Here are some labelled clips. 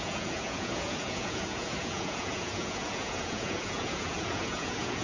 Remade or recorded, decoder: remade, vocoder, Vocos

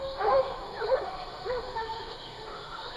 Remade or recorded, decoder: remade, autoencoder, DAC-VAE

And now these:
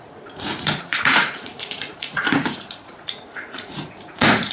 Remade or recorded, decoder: remade, vocoder, Vocos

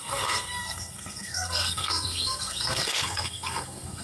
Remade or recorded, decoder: remade, codec, SNAC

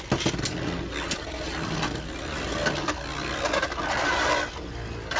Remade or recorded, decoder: recorded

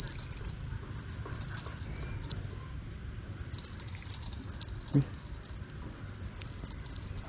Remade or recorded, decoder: recorded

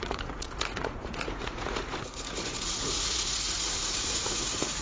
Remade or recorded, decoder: remade, vocoder, Vocos